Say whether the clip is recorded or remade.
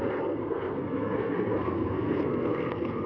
remade